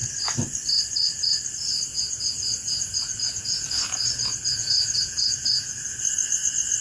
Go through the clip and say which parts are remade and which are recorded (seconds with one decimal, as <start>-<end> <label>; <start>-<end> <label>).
0.0-1.9 recorded; 1.9-6.0 remade; 6.0-6.8 recorded